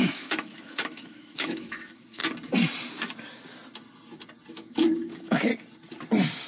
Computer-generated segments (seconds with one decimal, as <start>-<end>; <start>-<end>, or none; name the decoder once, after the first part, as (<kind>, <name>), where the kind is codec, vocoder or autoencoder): 0.0-2.2 (autoencoder, DAC-VAE); 4.5-5.5